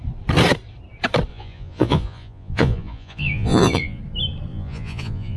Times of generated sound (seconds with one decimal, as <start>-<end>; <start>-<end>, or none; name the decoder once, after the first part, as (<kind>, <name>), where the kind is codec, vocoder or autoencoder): 1.3-4.0 (vocoder, Vocos); 4.5-5.4